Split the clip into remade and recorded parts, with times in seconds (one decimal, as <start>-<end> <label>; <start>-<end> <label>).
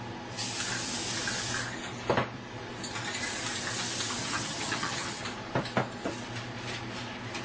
0.0-4.2 recorded; 4.2-5.2 remade; 5.2-7.4 recorded